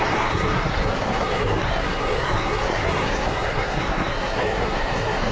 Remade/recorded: remade